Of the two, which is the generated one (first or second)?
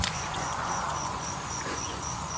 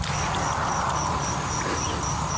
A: first